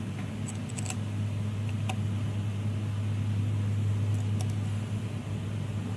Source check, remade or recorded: recorded